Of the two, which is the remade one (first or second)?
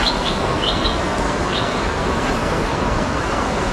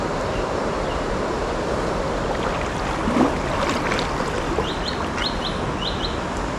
first